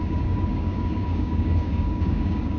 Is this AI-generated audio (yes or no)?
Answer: yes